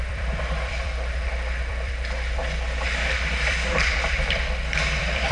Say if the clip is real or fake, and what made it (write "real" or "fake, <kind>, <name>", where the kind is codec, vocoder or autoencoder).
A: fake, vocoder, BigVGAN v2